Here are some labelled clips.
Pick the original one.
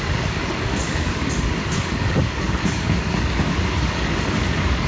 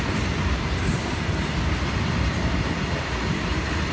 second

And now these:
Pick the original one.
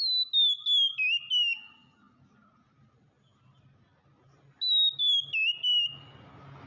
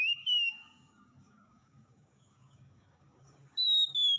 first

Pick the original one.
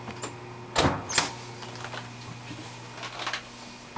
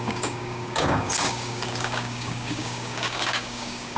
first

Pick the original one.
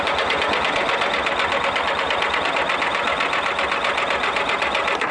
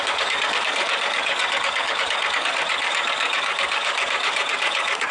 first